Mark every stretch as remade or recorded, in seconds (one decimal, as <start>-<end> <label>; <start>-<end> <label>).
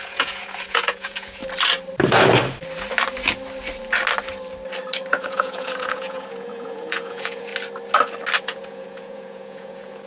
0.0-1.4 remade; 1.4-5.1 recorded; 5.1-7.5 remade; 7.5-8.4 recorded; 8.4-10.1 remade